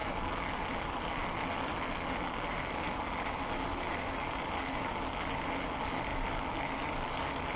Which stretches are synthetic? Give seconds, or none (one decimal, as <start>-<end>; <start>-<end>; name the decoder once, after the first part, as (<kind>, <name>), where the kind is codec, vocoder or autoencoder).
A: none